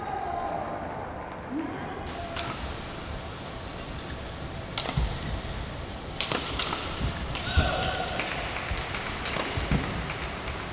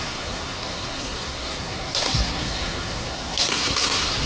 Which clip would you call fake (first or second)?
second